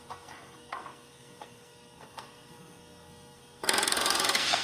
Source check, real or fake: fake